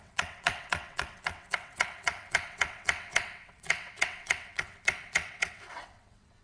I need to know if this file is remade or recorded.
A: remade